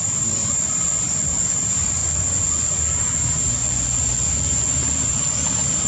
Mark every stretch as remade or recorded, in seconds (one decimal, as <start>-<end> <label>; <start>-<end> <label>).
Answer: 0.0-2.0 recorded; 2.0-3.0 remade; 3.0-3.6 recorded; 3.6-4.7 remade; 4.7-5.9 recorded